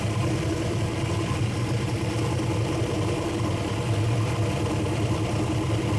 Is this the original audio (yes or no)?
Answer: no